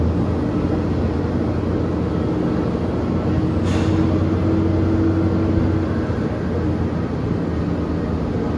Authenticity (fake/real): real